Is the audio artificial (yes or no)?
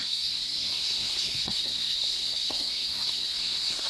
yes